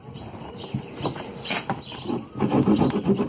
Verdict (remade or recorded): recorded